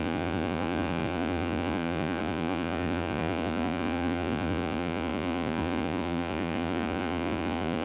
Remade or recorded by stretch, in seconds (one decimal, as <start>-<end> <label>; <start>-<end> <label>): 0.0-7.8 remade